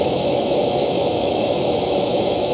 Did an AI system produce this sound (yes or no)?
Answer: yes